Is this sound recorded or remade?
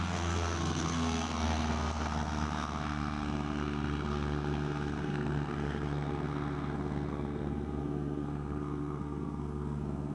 remade